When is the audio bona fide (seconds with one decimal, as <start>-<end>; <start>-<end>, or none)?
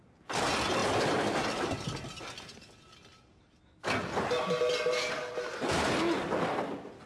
0.0-7.1